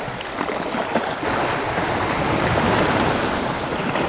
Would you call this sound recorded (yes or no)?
yes